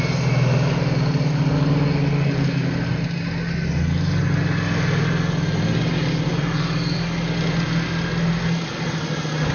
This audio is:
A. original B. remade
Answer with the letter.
A